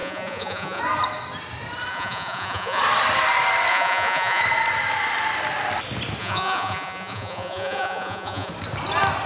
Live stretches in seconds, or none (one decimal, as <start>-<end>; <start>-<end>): 0.8-1.9; 2.8-3.7; 4.4-6.2; 8.5-9.3